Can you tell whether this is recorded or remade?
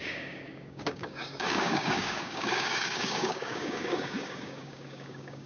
remade